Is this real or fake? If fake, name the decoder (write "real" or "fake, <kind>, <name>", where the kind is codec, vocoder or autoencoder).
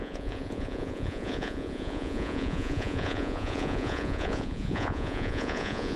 fake, vocoder, Vocos